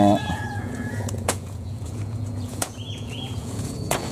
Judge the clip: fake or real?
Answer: fake